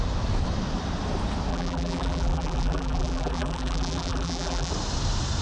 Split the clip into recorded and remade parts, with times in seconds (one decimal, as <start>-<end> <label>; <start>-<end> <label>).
0.0-1.5 recorded; 1.5-4.7 remade; 4.7-5.4 recorded